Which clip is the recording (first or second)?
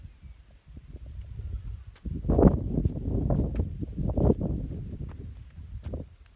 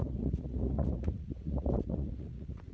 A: first